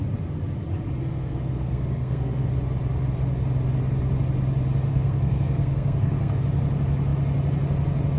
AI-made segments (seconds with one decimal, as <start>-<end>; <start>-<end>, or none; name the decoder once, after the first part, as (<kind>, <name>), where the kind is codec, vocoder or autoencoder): 1.0-2.5 (codec, SNAC); 4.9-6.4